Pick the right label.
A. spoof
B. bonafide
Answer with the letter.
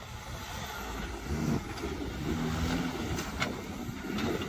B